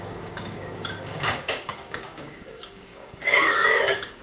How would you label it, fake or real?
fake